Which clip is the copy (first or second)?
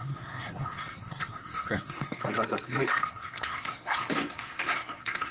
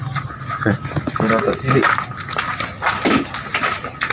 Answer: first